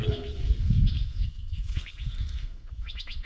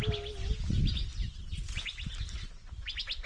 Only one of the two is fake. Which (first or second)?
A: first